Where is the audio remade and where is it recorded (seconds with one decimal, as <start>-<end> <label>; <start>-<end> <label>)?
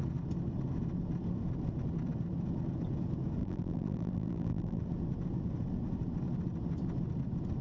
0.0-3.4 recorded; 3.4-4.8 remade; 4.8-7.6 recorded